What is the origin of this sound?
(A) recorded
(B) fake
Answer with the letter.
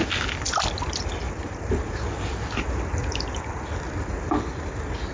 A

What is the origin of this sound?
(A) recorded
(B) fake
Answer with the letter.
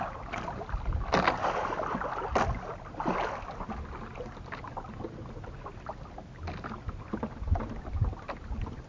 A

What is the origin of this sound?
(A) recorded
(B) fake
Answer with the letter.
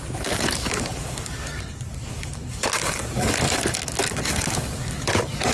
B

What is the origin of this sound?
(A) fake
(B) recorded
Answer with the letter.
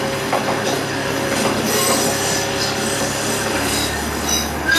A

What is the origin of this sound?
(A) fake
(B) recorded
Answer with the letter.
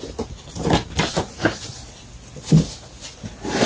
B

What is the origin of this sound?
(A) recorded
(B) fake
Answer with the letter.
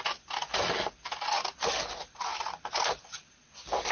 A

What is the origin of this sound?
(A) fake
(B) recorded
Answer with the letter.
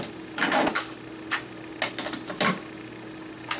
B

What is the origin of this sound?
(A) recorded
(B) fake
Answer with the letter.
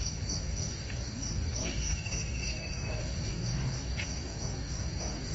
B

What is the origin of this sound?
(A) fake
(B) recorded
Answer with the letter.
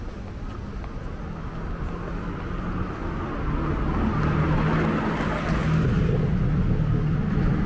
B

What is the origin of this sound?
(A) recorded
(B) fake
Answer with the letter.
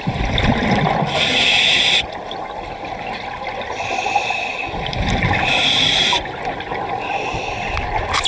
A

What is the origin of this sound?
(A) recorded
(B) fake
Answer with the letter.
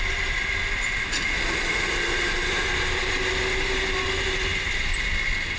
A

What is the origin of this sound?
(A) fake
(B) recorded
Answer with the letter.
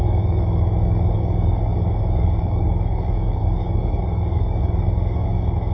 A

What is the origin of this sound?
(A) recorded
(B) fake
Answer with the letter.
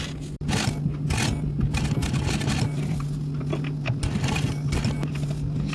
A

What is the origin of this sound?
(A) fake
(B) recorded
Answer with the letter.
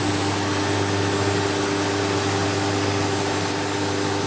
B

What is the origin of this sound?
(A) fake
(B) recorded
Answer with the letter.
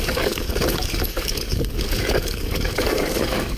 A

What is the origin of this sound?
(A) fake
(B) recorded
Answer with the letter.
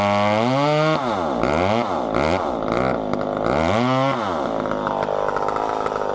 B